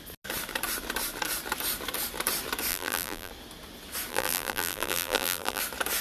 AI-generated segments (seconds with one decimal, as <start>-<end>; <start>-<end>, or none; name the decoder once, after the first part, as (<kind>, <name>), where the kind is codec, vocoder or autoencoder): 2.7-3.3 (vocoder, BigVGAN v2); 4.1-5.6